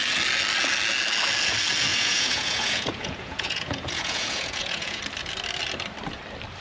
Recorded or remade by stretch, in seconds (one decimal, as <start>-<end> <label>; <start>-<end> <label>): 0.0-1.9 recorded; 1.9-5.0 remade; 5.0-6.6 recorded